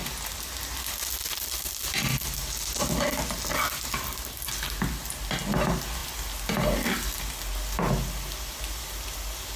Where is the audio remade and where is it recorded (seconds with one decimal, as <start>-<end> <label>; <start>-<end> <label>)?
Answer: 0.0-9.6 recorded